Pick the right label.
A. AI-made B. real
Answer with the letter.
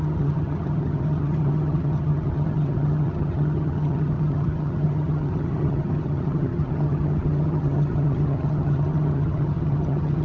A